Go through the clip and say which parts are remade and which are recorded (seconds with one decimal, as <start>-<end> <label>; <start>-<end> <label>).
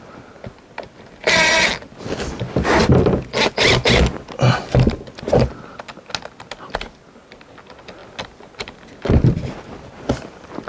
0.0-10.7 recorded